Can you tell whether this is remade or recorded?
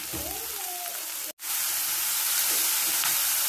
recorded